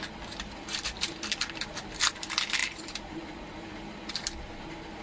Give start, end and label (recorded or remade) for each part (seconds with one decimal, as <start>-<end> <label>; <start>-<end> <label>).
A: 0.0-2.6 recorded; 2.6-3.2 remade; 3.2-5.0 recorded